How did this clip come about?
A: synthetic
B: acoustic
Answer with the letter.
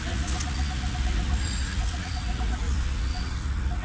A